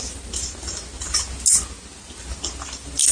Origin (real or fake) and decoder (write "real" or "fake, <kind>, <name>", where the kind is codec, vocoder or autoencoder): real